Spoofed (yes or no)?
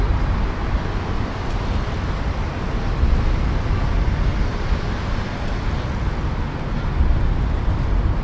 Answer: no